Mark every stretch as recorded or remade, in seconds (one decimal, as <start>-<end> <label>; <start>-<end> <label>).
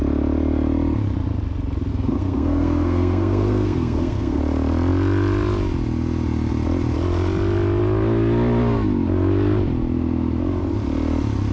0.0-1.9 recorded; 1.9-4.4 remade; 4.4-11.5 recorded